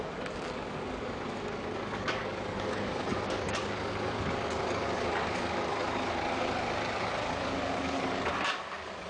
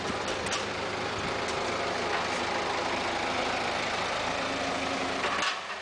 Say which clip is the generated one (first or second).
first